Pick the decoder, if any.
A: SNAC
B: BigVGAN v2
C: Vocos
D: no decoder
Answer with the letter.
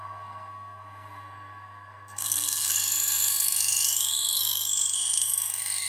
A